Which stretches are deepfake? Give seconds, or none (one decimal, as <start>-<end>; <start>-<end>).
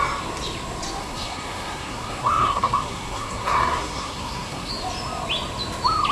1.0-4.7